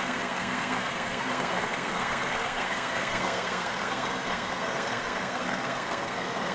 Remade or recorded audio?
remade